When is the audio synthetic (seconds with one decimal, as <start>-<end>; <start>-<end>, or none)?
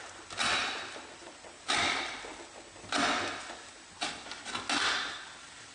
0.0-0.6; 1.1-2.3; 5.1-5.7